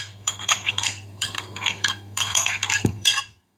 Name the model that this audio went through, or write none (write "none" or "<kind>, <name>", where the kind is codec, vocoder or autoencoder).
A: codec, SNAC